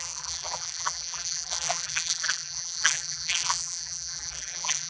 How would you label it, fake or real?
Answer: fake